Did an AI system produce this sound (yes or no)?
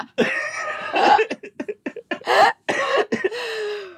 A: no